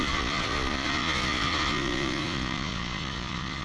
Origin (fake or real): fake